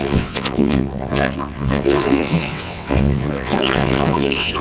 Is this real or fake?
fake